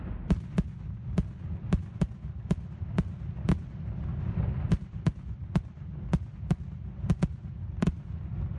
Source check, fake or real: real